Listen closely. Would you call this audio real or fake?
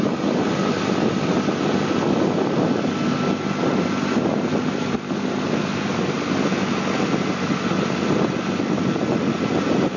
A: real